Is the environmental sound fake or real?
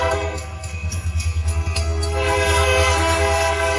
fake